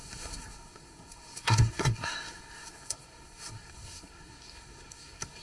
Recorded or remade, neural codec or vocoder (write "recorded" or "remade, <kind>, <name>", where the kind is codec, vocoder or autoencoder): remade, codec, SNAC